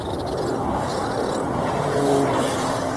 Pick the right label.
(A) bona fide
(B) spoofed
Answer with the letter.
A